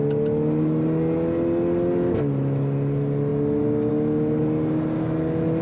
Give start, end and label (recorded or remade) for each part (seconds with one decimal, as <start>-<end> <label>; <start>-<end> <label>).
0.0-5.6 recorded